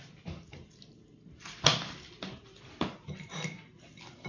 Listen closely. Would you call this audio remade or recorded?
recorded